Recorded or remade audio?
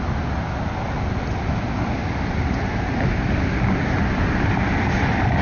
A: recorded